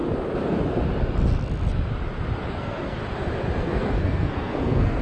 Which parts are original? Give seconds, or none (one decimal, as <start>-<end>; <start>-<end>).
0.0-2.5; 3.0-3.6